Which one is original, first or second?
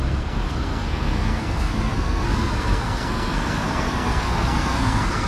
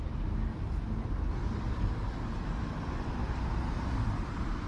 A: second